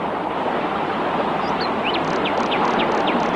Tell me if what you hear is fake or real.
real